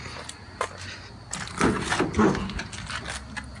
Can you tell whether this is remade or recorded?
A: recorded